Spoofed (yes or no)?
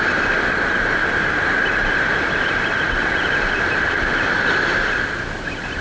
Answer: no